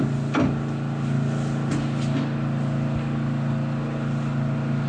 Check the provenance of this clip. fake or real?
real